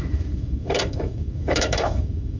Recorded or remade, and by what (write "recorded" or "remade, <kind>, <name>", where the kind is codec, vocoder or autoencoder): remade, autoencoder, DAC-VAE